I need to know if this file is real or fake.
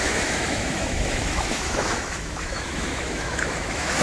fake